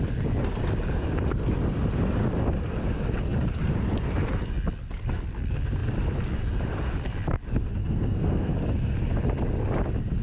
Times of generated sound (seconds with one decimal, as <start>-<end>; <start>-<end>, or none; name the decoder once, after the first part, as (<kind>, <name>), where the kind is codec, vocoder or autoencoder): 7.8-8.5 (codec, SNAC)

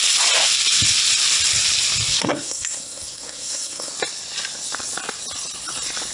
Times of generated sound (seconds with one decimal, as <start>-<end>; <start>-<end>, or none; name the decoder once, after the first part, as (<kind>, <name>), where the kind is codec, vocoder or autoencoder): 2.1-3.9 (codec, SNAC)

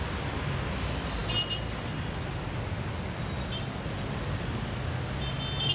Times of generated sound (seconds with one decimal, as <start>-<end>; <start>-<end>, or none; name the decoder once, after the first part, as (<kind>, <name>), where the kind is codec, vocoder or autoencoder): none